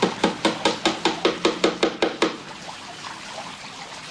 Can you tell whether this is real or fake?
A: real